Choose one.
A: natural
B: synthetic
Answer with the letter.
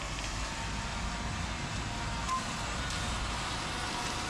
A